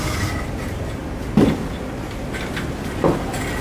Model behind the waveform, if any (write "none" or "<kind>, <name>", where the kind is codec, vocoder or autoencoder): none